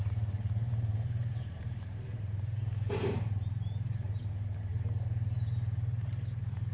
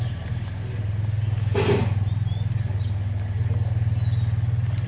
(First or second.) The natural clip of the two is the second